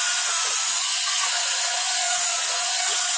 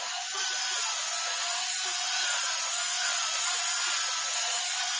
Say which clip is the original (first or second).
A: second